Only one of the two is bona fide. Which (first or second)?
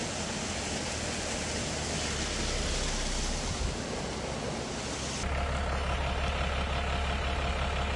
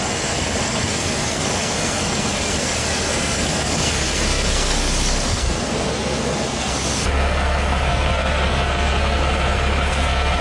first